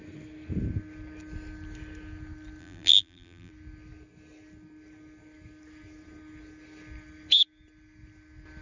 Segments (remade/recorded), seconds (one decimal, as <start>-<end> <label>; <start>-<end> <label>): 0.0-2.6 recorded; 2.6-3.5 remade; 3.5-8.6 recorded